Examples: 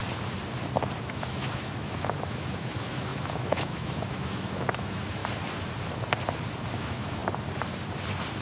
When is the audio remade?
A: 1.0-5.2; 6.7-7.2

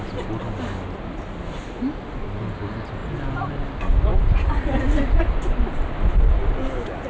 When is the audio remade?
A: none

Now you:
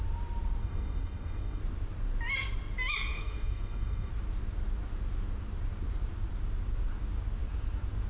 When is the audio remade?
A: 0.6-1.6; 3.1-4.1

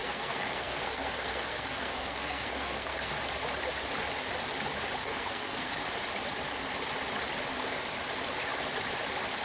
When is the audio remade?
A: 0.0-3.1; 5.0-5.8

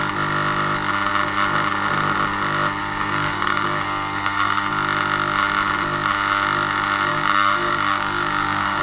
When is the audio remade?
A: 2.8-4.7; 7.1-8.8

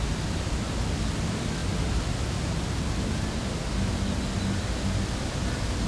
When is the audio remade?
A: none

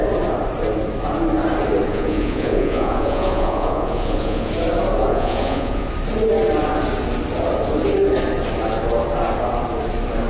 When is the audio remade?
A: 1.9-4.5; 5.1-5.9

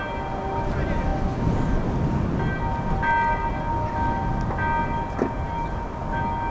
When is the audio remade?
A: none